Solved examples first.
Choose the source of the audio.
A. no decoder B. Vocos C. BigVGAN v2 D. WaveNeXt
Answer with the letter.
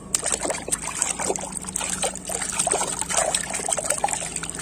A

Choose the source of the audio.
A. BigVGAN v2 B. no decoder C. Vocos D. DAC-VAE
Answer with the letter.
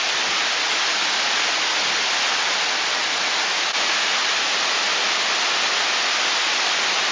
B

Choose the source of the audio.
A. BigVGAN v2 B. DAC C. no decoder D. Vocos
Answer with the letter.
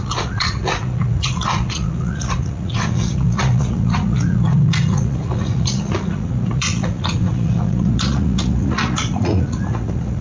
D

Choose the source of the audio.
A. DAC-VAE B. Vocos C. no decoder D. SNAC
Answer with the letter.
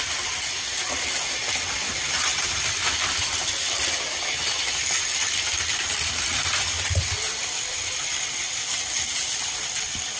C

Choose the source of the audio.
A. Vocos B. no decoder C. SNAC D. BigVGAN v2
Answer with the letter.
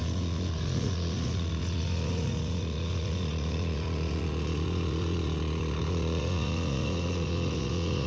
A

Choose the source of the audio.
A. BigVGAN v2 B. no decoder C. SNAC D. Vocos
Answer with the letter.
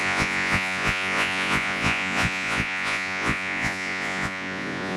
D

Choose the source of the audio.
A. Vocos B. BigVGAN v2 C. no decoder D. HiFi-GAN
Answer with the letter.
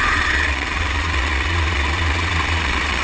A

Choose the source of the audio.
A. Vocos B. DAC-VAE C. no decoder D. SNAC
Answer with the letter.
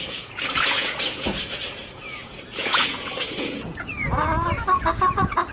A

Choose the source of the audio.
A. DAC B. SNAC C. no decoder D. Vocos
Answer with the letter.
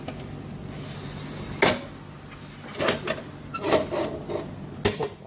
C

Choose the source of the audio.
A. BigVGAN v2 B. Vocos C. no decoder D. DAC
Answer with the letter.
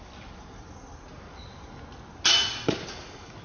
C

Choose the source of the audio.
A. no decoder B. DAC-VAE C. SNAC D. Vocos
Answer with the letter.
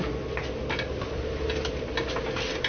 A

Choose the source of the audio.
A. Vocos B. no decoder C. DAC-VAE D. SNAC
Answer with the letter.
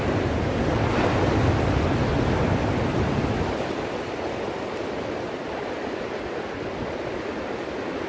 B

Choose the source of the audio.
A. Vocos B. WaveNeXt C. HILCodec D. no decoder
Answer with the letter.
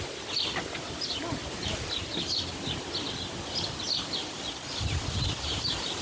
D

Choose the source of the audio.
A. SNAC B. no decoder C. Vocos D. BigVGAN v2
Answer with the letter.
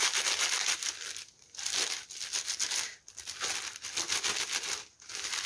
B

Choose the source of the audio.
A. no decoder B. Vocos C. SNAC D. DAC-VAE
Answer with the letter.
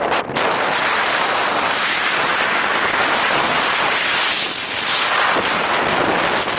A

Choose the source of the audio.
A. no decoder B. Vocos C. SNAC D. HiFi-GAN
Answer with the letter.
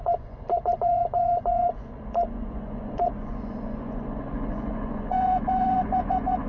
B